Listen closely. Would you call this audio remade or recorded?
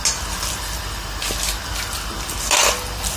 recorded